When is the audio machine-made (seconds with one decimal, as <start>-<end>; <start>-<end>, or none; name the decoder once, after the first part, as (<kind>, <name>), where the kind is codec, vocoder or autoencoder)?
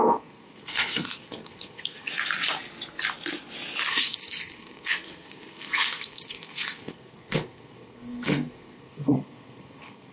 0.0-2.1 (codec, SNAC); 3.9-10.1